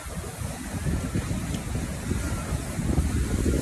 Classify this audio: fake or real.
real